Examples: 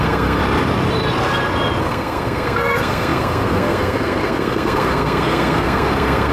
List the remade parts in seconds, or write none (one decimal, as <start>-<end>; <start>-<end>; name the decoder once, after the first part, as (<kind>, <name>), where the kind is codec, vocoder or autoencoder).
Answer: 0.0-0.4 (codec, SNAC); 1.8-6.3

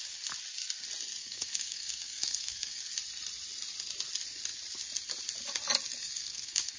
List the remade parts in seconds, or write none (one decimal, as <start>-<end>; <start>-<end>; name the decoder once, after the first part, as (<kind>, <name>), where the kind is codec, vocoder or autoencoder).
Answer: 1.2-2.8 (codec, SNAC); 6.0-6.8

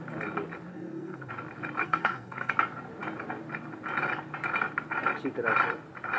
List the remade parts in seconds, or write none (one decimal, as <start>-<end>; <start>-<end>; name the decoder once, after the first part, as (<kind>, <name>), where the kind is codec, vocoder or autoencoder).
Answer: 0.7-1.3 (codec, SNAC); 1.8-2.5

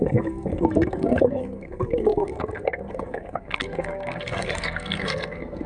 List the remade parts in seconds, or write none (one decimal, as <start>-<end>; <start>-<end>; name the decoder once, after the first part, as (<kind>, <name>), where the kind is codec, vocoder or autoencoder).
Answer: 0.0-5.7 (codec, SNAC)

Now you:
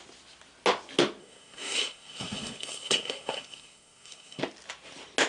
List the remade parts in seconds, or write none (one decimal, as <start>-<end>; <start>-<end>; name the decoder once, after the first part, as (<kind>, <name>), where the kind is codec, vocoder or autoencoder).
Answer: 1.2-4.4 (codec, SNAC)